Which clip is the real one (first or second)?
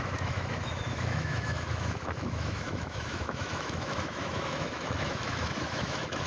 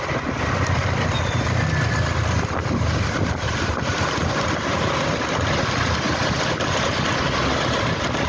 second